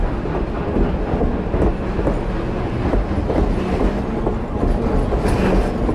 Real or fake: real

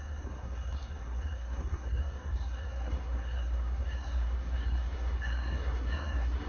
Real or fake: fake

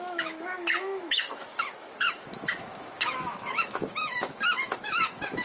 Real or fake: fake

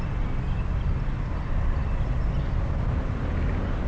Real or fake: real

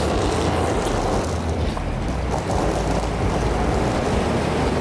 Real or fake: real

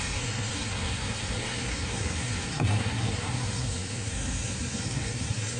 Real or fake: fake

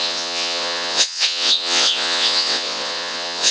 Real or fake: fake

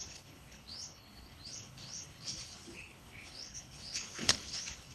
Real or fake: fake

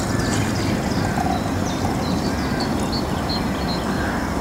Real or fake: real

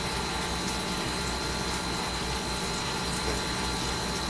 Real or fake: real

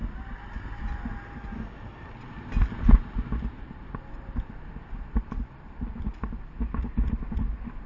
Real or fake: real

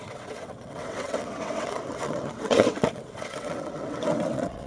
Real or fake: fake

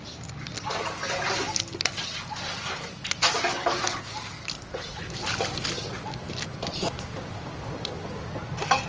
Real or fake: real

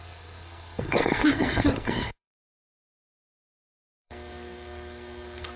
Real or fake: fake